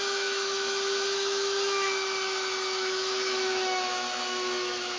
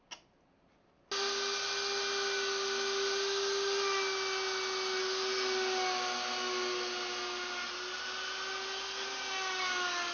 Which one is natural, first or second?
second